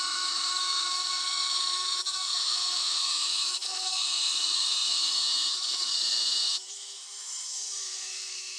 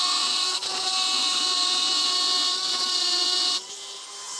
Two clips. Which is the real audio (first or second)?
second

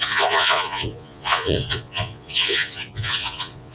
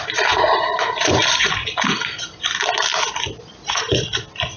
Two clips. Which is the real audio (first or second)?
second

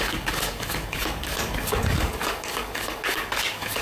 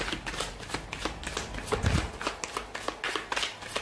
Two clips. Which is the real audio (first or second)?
second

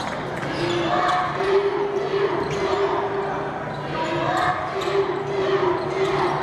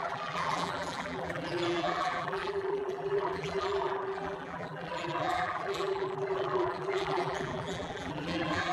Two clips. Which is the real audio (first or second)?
first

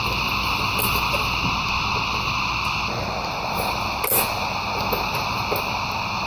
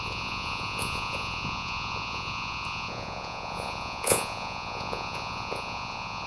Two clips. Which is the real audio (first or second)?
first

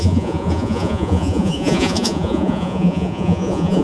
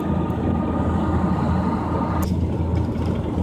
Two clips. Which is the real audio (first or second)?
second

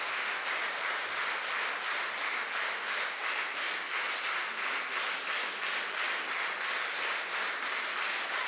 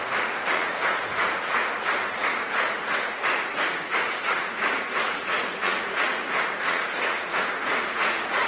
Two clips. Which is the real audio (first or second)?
first